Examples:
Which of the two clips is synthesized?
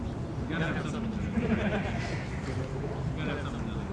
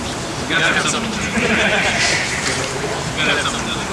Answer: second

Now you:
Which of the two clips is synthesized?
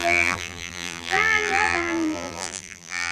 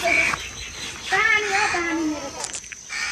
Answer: first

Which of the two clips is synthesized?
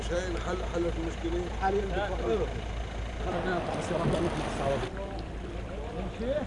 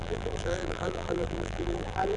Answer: second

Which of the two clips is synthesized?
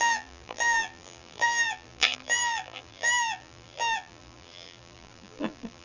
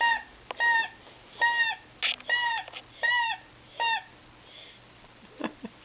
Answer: first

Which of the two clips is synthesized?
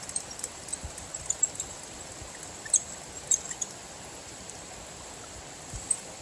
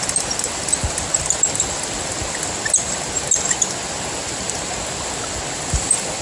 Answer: first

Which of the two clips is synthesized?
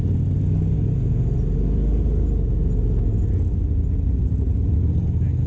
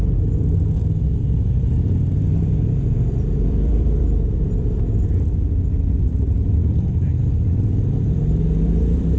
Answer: second